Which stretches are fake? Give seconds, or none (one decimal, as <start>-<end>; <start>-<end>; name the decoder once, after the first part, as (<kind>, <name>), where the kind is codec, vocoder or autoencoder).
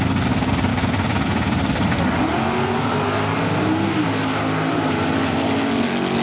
0.7-1.6 (vocoder, Vocos)